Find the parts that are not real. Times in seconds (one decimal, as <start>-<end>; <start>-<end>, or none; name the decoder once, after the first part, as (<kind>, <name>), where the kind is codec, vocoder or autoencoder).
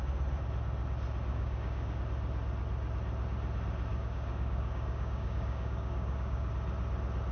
1.3-2.0 (codec, DAC); 3.9-6.5